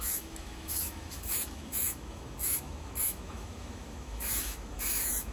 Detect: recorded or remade remade